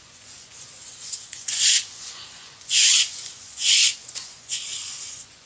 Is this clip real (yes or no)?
no